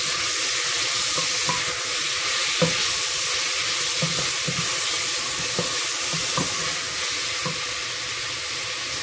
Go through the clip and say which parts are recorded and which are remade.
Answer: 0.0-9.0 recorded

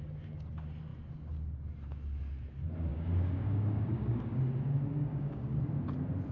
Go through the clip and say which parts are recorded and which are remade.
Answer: 0.0-2.9 recorded; 2.9-4.4 remade; 4.4-4.9 recorded; 4.9-5.6 remade; 5.6-6.3 recorded

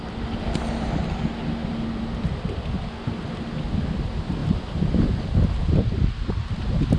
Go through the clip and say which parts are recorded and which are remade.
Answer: 0.0-7.0 recorded